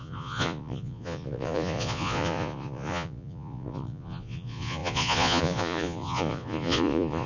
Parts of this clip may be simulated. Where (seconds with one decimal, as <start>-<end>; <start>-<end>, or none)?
0.0-7.3